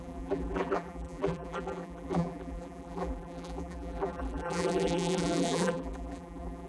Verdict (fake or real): fake